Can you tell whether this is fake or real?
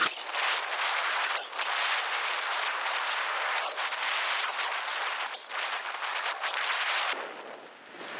real